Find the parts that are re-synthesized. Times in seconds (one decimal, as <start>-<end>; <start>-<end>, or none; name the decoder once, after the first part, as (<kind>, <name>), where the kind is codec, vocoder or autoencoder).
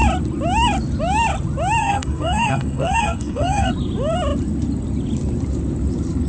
1.8-3.7 (codec, SNAC)